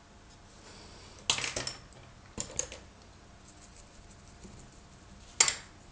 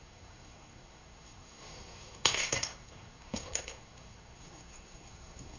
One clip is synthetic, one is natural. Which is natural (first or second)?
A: first